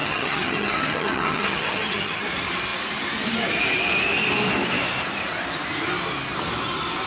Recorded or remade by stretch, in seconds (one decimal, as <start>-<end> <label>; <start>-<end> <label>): 0.0-2.2 remade; 2.2-7.1 recorded